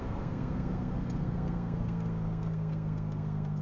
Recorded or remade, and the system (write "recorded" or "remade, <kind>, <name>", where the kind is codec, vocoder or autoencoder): remade, codec, SNAC